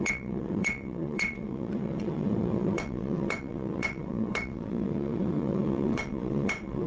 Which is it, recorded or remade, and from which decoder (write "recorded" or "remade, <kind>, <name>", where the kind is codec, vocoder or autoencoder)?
remade, vocoder, WaveNeXt